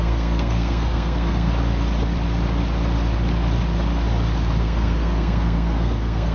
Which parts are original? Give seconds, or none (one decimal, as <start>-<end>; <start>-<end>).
1.5-4.6